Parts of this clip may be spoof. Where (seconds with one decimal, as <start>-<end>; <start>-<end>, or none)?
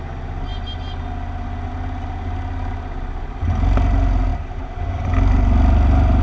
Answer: none